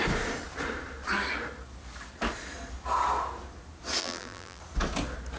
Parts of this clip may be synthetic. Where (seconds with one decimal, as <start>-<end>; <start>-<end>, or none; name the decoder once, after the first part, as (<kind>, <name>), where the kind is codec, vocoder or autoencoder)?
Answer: 4.0-4.6 (vocoder, BigVGAN v2)